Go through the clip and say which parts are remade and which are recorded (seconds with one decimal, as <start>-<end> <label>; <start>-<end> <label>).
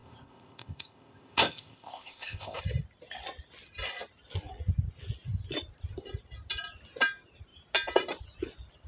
0.0-2.6 remade; 2.6-8.9 recorded